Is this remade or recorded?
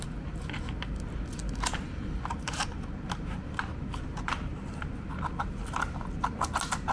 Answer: recorded